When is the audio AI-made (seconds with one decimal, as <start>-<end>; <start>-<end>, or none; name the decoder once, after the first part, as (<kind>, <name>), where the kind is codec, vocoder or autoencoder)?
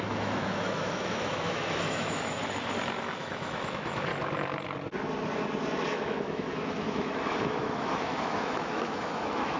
0.0-2.4 (autoencoder, DAC-VAE); 3.0-4.1; 5.9-9.6